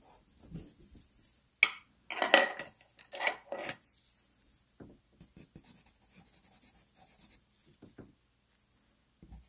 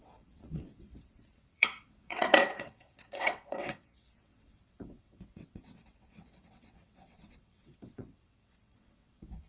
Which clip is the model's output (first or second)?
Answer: second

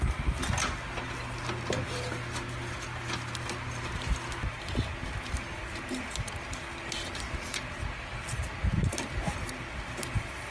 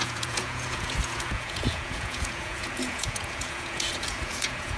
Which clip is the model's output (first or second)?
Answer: second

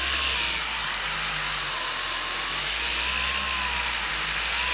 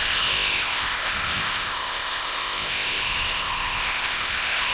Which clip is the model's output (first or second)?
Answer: second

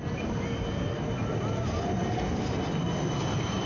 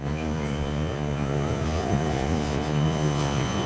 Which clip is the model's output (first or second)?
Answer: second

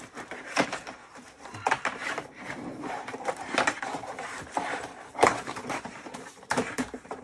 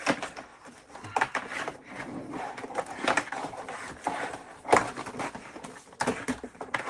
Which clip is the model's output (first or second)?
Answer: first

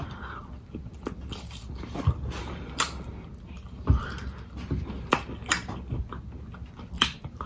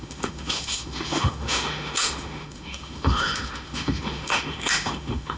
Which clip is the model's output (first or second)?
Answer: second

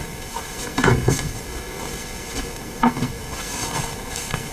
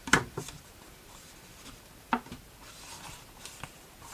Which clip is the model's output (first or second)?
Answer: first